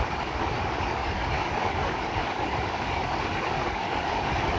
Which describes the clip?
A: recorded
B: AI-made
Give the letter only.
B